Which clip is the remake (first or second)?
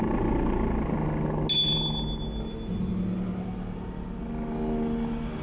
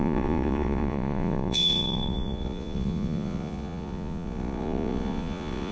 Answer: second